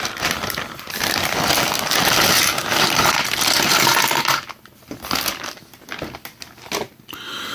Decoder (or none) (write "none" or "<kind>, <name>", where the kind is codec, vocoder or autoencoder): none